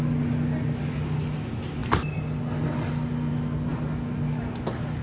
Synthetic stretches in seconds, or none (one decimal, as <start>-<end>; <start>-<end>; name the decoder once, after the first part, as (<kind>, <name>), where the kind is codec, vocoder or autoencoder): none

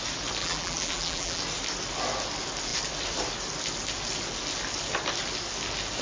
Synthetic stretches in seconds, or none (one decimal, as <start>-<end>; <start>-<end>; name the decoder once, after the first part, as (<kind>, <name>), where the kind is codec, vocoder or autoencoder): 0.4-1.4 (vocoder, BigVGAN v2)

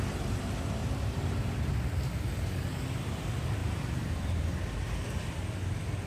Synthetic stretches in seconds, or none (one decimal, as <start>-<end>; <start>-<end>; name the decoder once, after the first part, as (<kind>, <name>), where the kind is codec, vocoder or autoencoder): 0.8-1.7 (vocoder, BigVGAN v2); 3.6-4.7

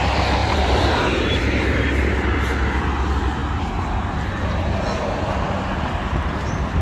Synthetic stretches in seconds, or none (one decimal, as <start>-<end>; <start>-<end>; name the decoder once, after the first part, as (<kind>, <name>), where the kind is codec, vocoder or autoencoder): 0.4-1.6 (vocoder, BigVGAN v2)

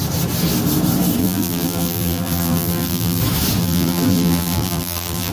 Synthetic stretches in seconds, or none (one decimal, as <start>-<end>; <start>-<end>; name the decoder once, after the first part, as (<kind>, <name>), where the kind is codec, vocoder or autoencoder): 1.2-3.2 (vocoder, BigVGAN v2); 3.6-5.3

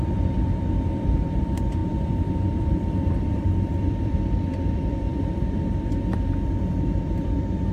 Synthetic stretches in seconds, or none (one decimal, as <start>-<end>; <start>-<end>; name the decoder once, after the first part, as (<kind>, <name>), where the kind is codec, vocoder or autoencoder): 0.0-7.7 (vocoder, BigVGAN v2)

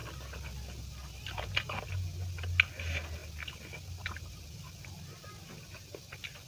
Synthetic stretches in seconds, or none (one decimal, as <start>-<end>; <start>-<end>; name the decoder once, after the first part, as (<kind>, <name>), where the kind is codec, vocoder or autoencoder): none